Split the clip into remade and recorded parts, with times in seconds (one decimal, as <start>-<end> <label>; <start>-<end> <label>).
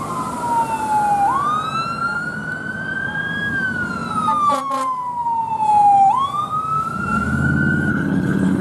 0.0-7.9 recorded; 7.9-8.6 remade